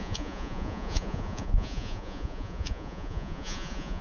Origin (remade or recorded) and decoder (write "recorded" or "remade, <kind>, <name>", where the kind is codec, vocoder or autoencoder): remade, vocoder, Vocos